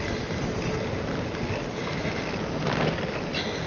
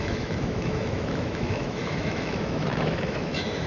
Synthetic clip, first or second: second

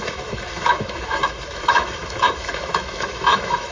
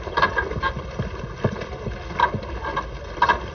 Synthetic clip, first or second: first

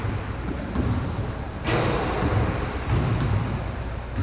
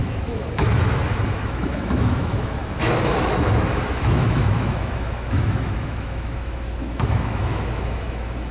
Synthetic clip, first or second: second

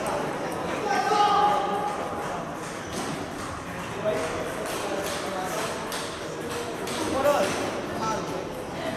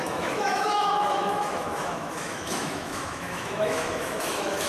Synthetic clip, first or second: second